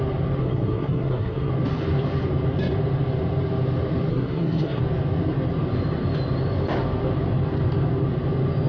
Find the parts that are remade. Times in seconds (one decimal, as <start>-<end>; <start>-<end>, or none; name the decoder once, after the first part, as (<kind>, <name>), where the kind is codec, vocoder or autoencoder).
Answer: 0.4-1.5 (codec, SNAC); 4.1-4.8